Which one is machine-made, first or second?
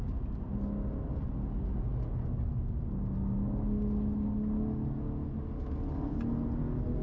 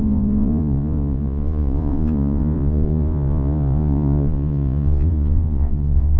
second